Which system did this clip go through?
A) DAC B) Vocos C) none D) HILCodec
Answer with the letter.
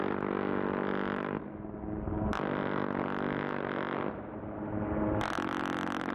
C